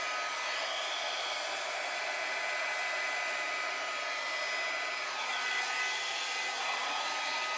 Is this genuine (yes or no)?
yes